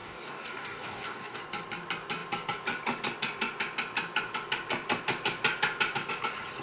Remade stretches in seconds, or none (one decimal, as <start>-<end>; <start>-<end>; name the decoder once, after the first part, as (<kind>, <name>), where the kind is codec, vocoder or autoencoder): 0.0-1.4 (codec, DAC)